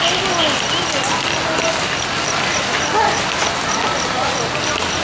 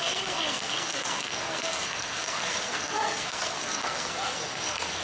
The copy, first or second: second